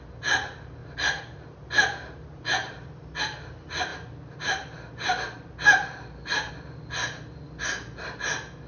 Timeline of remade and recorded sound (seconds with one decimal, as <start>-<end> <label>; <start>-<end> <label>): 0.0-0.8 recorded; 0.8-3.2 remade; 3.2-8.7 recorded